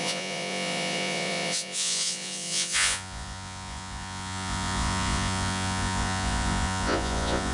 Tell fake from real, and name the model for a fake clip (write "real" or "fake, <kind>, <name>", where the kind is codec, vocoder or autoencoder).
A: fake, vocoder, Vocos